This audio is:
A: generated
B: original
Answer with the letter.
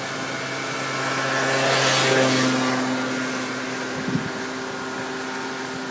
B